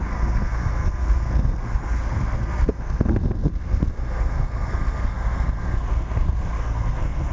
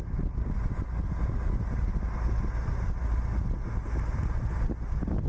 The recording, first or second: second